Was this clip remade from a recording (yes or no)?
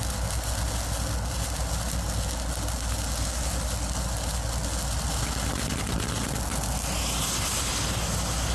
no